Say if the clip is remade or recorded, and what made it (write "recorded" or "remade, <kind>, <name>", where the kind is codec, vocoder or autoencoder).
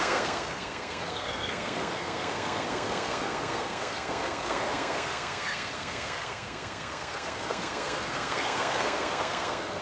remade, codec, SNAC